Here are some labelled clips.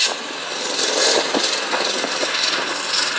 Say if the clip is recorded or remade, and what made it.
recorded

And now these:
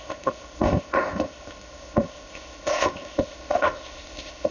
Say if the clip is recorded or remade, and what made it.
remade, codec, ZipCodec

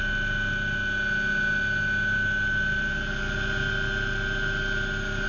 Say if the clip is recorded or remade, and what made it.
recorded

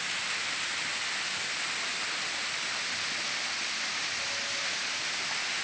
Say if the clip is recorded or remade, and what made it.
recorded